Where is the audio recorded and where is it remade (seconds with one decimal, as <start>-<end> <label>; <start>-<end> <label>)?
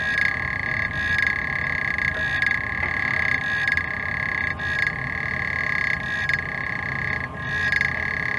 0.0-8.4 recorded